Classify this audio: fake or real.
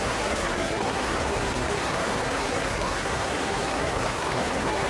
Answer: fake